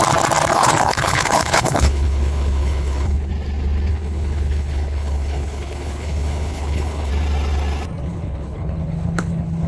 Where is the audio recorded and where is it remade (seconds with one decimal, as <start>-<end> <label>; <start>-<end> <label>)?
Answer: 0.0-0.5 recorded; 0.5-3.3 remade; 3.3-3.9 recorded; 3.9-7.1 remade; 7.1-8.0 recorded; 8.0-9.7 remade